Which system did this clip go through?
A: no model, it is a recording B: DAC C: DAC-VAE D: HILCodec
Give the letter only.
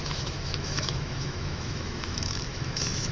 C